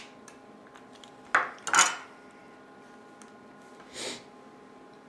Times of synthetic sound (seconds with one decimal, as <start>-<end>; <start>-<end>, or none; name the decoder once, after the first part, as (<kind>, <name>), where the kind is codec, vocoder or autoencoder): none